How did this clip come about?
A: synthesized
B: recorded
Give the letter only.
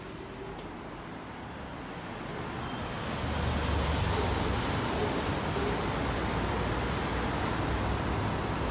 B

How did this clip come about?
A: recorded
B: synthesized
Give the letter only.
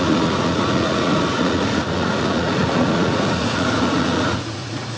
B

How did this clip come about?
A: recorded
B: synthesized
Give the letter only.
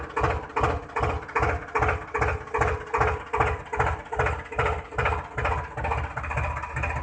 A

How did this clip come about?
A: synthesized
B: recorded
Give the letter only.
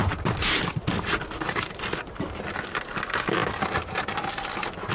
B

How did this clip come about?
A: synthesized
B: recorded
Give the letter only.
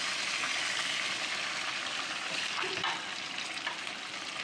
B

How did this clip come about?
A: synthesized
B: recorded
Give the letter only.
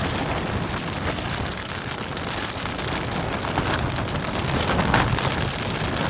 B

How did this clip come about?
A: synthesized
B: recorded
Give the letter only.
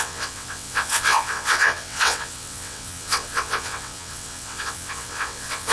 A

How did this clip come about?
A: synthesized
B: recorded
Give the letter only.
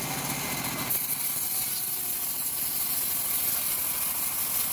B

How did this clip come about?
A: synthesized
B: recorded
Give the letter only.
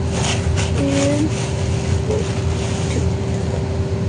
B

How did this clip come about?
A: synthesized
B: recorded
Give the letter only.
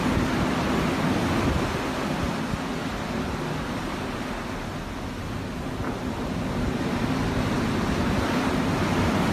B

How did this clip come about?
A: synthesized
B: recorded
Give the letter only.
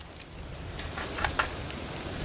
B